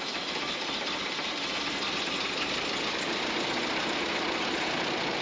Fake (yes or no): no